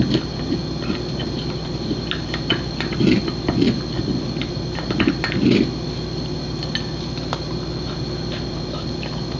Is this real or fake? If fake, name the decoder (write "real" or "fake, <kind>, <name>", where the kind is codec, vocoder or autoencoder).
real